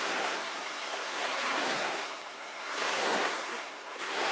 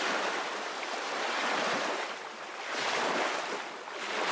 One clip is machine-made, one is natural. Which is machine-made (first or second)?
first